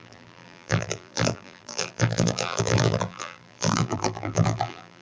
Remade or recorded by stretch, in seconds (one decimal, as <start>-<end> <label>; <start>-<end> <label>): 0.0-5.0 remade